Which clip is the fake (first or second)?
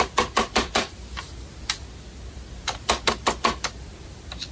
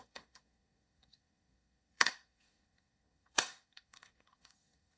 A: second